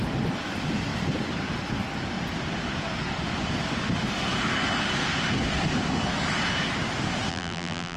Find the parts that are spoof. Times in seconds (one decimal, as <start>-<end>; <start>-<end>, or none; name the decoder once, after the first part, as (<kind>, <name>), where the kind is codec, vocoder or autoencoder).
7.3-8.0 (vocoder, BigVGAN v2)